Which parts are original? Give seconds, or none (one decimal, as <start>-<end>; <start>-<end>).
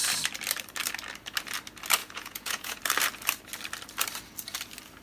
0.0-2.0; 2.8-5.0